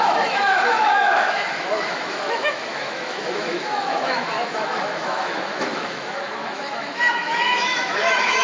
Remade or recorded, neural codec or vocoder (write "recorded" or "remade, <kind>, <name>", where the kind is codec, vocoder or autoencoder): remade, autoencoder, DAC-VAE